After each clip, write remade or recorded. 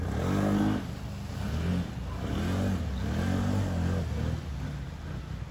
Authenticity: recorded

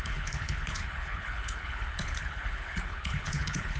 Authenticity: remade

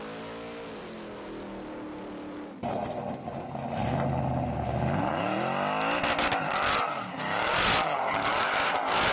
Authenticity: recorded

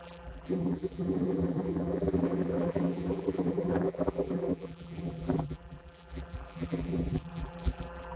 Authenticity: remade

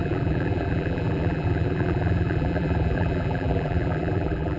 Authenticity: remade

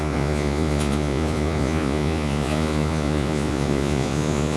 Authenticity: remade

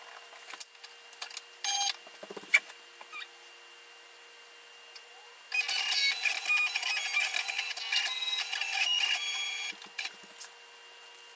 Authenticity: recorded